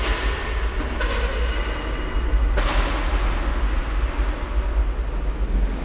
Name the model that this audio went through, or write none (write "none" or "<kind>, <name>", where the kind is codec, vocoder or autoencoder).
none